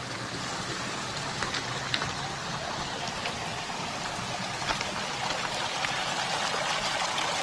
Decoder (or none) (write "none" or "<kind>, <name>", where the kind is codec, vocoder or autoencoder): none